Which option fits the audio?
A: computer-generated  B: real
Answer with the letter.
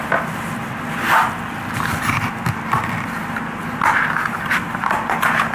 B